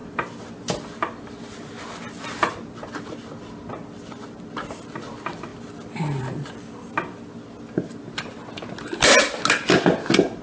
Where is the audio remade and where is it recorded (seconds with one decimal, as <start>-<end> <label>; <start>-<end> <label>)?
0.0-5.5 recorded; 5.5-6.9 remade; 6.9-10.4 recorded